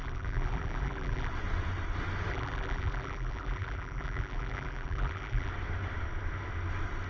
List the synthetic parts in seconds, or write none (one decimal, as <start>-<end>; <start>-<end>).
0.0-1.3; 2.3-5.5